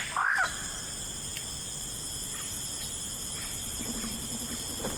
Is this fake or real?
real